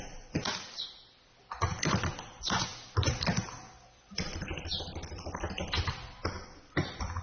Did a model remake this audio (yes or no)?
no